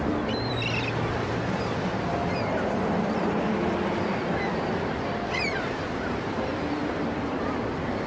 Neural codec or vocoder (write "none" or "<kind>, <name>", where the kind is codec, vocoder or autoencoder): vocoder, BigVGAN v2